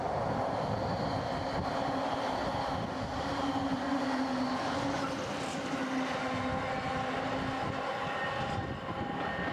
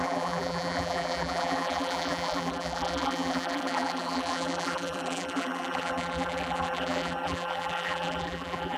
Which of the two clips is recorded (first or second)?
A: first